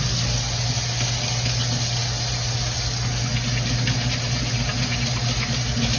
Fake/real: real